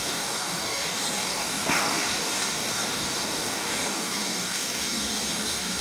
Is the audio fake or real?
fake